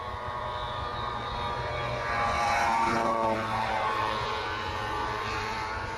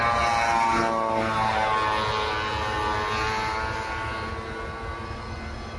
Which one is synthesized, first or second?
first